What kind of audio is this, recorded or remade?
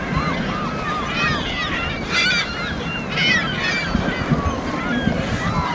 recorded